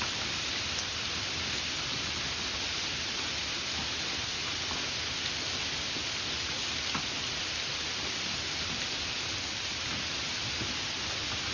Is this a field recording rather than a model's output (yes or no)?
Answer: yes